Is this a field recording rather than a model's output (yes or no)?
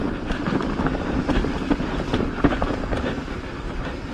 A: yes